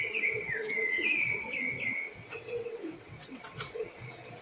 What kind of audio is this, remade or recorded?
remade